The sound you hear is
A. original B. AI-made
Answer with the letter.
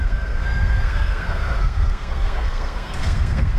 B